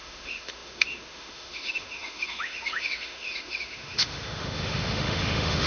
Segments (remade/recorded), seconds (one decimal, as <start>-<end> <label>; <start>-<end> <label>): 0.0-5.7 remade